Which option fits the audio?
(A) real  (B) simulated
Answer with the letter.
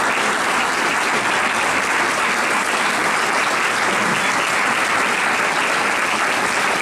A